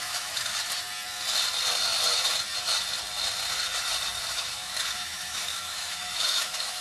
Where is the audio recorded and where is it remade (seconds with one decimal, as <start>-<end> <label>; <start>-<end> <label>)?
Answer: 0.0-0.5 remade; 0.5-4.3 recorded; 4.3-6.8 remade